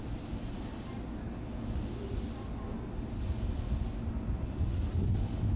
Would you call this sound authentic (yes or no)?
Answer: yes